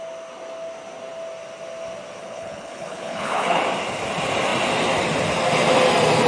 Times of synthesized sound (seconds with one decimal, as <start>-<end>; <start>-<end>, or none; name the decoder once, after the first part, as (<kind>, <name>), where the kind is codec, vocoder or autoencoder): 2.2-3.6 (codec, HILCodec)